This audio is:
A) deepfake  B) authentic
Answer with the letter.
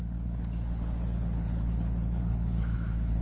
A